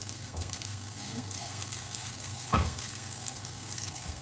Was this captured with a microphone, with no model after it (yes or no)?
no